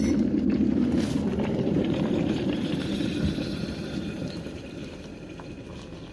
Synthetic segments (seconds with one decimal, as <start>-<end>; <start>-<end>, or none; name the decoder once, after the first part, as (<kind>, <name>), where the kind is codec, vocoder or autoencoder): 1.3-4.6 (vocoder, BigVGAN v2)